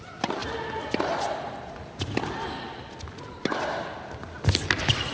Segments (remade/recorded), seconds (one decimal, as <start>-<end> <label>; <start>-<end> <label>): 0.0-5.1 recorded

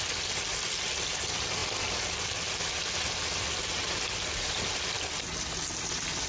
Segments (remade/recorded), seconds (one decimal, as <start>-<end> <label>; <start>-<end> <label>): 0.0-6.3 recorded

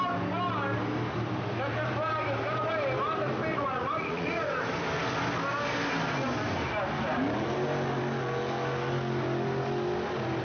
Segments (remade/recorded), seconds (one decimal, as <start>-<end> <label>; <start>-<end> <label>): 0.0-3.5 recorded; 3.5-4.6 remade; 4.6-10.4 recorded

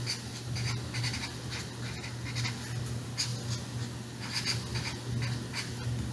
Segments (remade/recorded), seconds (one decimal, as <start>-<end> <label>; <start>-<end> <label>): 0.0-6.1 recorded